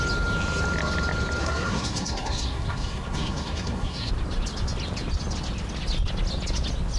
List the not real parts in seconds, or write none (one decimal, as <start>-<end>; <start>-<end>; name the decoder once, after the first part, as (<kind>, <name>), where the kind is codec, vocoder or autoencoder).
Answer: 1.4-4.1 (codec, SNAC)